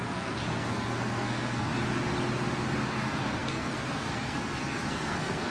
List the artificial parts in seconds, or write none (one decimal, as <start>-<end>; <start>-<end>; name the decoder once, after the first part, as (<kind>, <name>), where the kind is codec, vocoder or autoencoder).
0.0-1.7 (codec, SNAC); 2.9-5.5